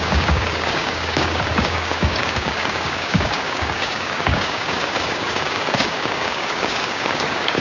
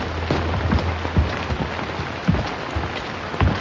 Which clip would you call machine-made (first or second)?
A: first